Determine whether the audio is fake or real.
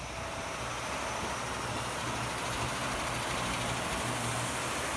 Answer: real